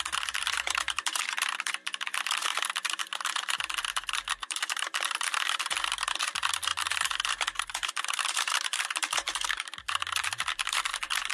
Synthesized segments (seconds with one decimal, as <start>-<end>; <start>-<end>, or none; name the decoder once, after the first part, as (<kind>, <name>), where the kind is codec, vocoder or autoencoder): 0.0-6.7 (vocoder, BigVGAN v2); 7.6-11.3